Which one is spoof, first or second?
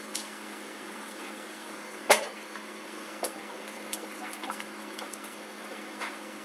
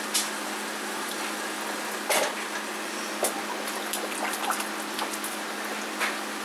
first